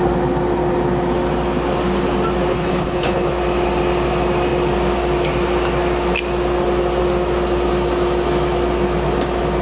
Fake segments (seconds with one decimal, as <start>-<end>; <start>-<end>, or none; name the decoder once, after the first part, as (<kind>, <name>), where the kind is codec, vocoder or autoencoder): 2.5-3.3 (codec, HILCodec)